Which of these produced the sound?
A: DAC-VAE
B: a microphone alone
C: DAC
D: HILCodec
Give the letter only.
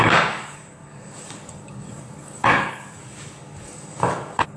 C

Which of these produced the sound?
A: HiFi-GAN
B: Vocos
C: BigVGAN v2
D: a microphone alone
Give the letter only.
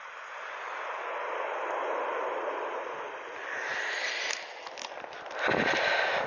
D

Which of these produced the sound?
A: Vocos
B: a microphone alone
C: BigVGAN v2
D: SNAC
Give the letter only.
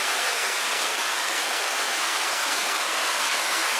D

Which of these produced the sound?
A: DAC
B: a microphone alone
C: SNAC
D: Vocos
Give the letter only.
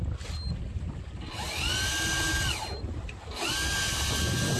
B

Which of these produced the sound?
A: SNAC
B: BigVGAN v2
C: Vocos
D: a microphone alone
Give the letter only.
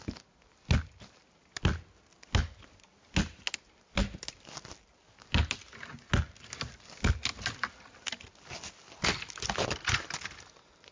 D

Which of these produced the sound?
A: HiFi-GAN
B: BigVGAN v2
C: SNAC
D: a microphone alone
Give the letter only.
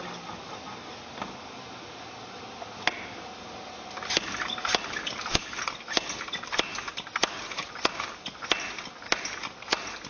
D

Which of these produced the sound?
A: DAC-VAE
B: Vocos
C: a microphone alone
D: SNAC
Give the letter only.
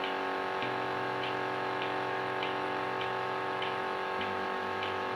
A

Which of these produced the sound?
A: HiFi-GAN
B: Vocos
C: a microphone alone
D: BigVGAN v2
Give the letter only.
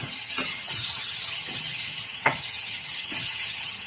A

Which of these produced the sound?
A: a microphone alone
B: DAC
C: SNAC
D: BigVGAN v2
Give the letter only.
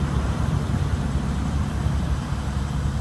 D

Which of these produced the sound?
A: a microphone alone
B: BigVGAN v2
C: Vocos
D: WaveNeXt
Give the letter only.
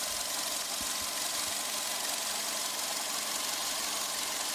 A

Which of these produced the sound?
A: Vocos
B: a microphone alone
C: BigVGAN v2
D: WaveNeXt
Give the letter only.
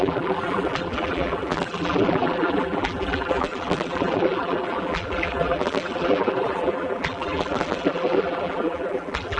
C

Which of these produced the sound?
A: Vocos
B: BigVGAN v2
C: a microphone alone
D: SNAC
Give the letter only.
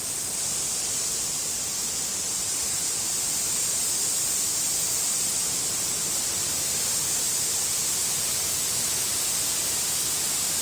C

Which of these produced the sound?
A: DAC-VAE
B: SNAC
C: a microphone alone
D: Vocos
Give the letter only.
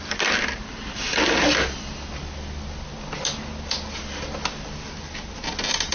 C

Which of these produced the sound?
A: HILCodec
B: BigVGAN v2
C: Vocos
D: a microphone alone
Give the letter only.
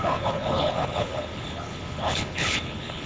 A